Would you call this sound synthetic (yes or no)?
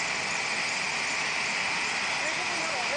no